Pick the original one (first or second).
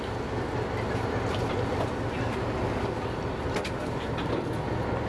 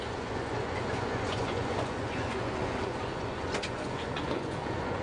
first